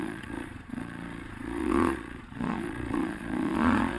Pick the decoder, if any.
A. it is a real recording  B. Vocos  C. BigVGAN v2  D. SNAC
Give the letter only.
B